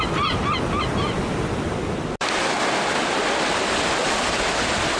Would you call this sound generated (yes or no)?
no